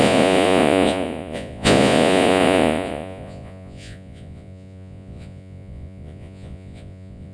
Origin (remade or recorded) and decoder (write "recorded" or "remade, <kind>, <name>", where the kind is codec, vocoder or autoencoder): remade, vocoder, Vocos